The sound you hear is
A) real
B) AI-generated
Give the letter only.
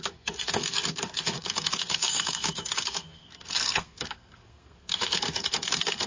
B